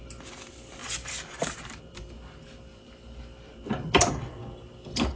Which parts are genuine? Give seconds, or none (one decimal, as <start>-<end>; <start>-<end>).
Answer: 0.0-0.8; 2.0-2.7; 4.4-5.2